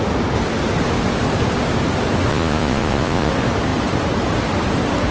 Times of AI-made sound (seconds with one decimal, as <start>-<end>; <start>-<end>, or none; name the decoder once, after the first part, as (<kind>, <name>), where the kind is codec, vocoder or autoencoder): 2.3-3.3 (vocoder, Vocos)